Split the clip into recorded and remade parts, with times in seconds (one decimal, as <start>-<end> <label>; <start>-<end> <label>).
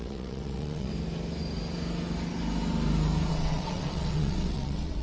0.0-0.9 remade; 0.9-3.3 recorded; 3.3-5.0 remade